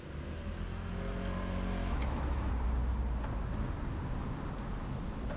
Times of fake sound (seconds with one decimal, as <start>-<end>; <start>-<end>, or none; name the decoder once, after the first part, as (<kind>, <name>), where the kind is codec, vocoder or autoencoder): 1.8-2.5 (autoencoder, DAC-VAE)